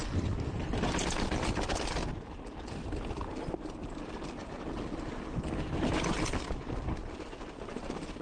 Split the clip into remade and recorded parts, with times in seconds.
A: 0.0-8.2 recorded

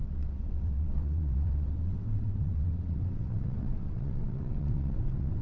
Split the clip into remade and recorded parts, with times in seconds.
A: 0.0-5.4 remade

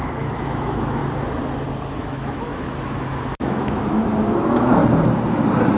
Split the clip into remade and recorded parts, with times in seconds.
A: 0.0-1.0 remade; 1.0-2.0 recorded; 2.0-4.8 remade; 4.8-5.8 recorded